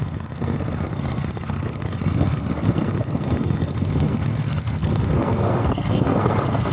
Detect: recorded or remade remade